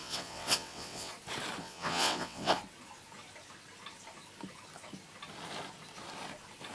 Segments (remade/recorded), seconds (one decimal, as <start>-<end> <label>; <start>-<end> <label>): 0.0-1.1 remade; 1.1-1.6 recorded; 1.6-2.6 remade; 2.6-6.7 recorded